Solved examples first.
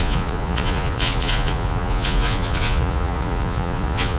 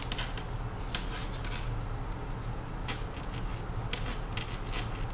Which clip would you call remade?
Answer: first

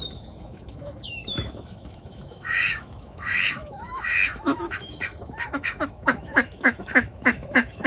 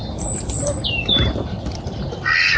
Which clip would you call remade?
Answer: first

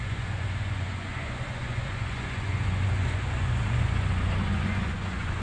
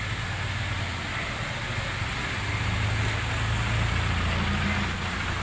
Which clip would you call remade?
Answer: first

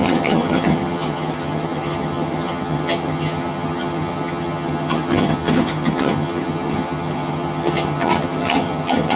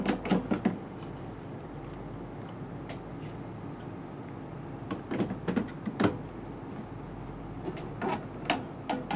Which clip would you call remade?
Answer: first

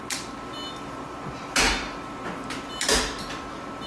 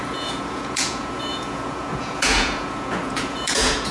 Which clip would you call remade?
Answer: second